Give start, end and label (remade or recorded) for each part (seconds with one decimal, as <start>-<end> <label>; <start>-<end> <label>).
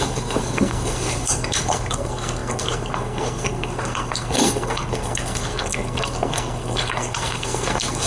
0.0-8.1 remade